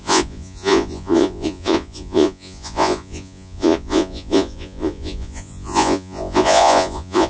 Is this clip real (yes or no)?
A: no